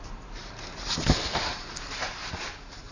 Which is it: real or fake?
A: fake